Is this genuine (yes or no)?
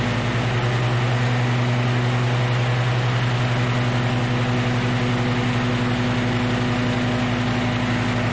yes